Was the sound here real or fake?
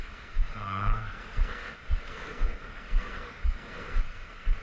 fake